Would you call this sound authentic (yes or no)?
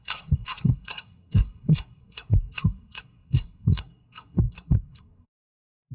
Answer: no